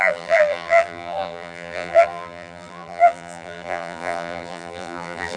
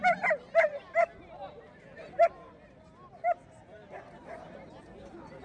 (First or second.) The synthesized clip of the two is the first